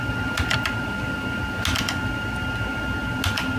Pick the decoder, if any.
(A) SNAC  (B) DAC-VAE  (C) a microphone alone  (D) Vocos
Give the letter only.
C